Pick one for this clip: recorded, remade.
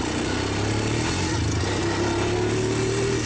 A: recorded